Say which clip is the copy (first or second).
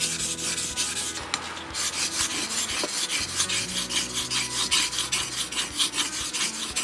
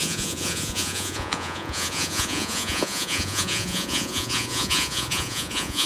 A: second